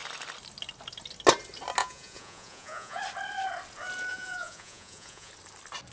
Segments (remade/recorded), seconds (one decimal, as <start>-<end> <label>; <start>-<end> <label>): 0.0-1.8 recorded; 1.8-3.0 remade; 3.0-4.1 recorded; 4.1-5.3 remade; 5.3-5.9 recorded